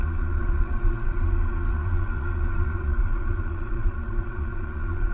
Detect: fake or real fake